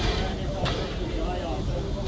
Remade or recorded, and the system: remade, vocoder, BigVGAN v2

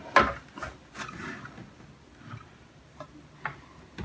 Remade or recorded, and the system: recorded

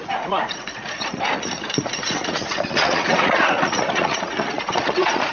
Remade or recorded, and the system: remade, vocoder, Vocos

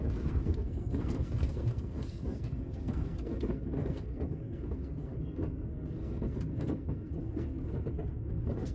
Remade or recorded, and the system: remade, codec, SNAC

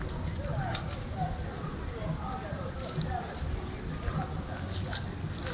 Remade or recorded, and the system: recorded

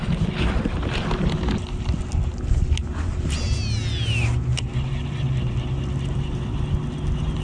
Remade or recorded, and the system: recorded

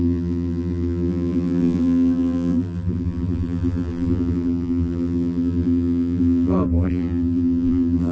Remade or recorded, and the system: remade, vocoder, BigVGAN v2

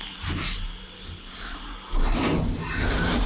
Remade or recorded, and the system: remade, vocoder, BigVGAN v2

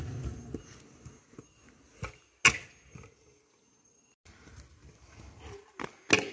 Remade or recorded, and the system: recorded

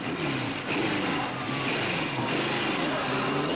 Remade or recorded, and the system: recorded